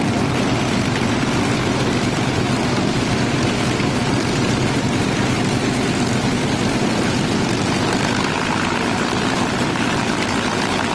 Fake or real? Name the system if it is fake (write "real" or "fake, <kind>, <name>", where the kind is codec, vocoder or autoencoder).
fake, vocoder, BigVGAN v2